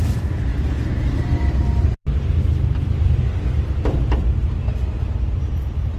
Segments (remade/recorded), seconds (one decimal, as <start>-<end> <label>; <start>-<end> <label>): 0.0-0.5 recorded; 0.5-4.1 remade; 4.1-6.0 recorded